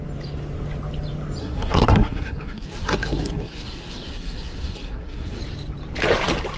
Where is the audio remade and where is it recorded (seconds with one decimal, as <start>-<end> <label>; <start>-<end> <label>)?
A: 0.0-1.4 recorded; 1.4-5.4 remade; 5.4-6.6 recorded